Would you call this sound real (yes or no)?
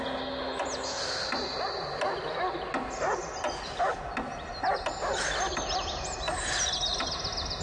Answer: yes